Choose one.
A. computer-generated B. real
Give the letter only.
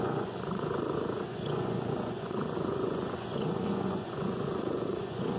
A